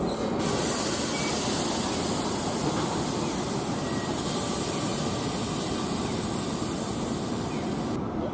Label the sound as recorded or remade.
recorded